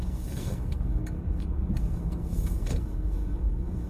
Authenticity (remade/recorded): remade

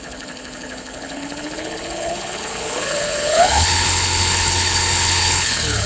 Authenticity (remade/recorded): remade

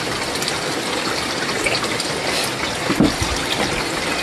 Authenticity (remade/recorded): recorded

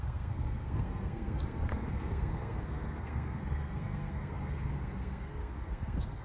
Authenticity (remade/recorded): remade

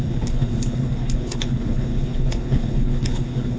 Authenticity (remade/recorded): remade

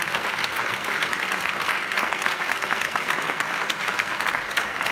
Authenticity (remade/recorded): remade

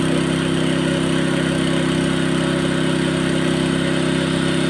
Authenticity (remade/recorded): recorded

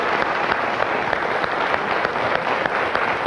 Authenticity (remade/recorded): recorded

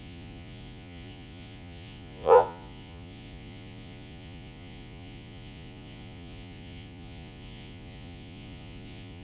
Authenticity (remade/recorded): remade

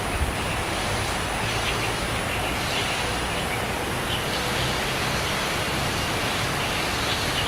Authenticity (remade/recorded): recorded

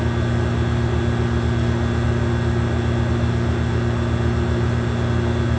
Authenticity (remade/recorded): recorded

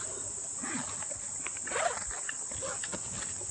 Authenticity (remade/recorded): recorded